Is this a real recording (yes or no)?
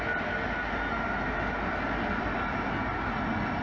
yes